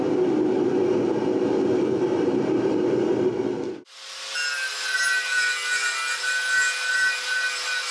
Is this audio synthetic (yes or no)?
no